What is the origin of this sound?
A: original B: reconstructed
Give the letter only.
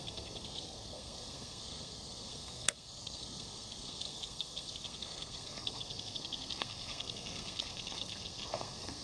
B